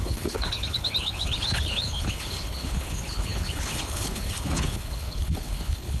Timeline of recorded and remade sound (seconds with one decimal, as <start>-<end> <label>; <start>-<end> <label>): 0.0-6.0 remade